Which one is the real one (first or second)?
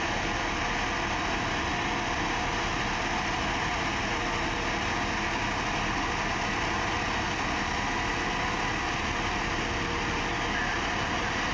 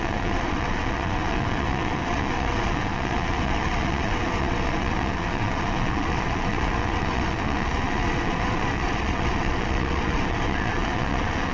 first